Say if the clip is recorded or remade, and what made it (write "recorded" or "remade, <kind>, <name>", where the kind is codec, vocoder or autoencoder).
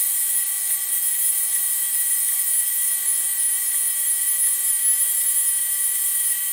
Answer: recorded